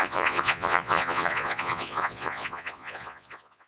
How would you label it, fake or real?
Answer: fake